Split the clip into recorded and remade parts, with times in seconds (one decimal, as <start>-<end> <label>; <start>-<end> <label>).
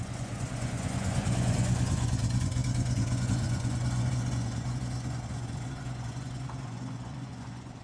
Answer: 0.0-7.8 remade